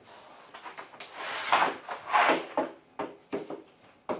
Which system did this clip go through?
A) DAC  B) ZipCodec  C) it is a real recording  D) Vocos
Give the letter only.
C